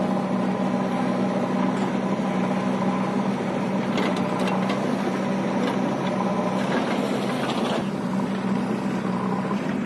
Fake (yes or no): no